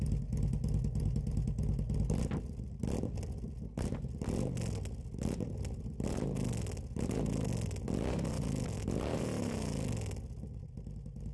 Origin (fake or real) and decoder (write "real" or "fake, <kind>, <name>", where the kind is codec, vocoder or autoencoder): real